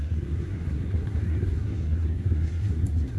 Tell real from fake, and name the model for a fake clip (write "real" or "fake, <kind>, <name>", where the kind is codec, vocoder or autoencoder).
fake, codec, SNAC